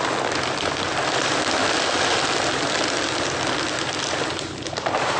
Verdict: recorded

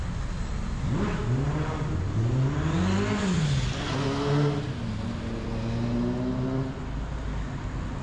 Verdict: recorded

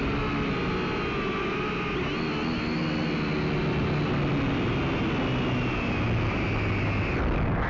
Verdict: recorded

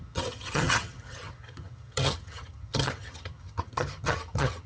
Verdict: remade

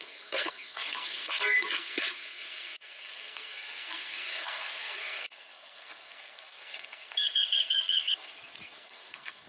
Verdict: remade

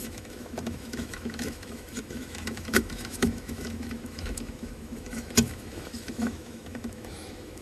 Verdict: remade